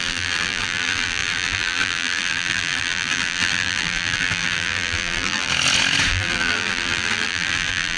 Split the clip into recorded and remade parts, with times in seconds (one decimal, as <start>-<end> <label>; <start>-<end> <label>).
0.0-5.5 remade; 5.5-6.1 recorded; 6.1-8.0 remade